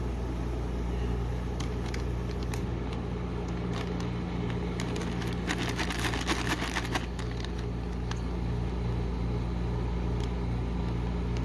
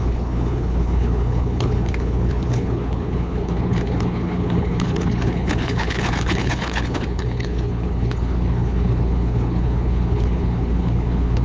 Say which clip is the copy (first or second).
second